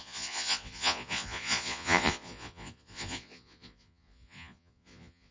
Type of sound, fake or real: fake